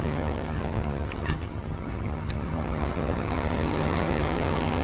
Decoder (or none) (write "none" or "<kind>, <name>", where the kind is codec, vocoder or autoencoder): vocoder, HiFi-GAN